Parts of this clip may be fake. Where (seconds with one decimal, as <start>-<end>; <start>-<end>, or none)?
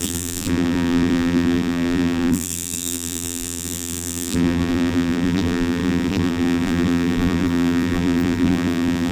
0.0-9.1